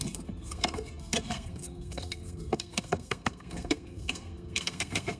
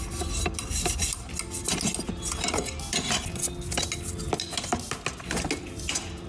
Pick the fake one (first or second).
first